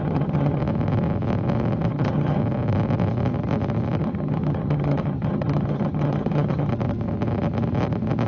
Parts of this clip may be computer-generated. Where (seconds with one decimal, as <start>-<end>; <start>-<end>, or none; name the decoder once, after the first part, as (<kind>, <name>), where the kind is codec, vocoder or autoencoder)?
0.0-0.6 (vocoder, HiFi-GAN); 1.9-2.4; 4.0-6.7